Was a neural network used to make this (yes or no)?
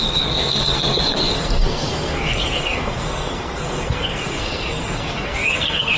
yes